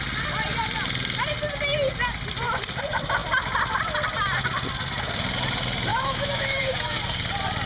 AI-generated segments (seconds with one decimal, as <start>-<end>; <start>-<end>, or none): 5.9-7.0